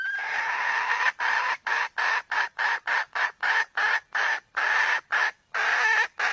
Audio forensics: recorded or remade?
recorded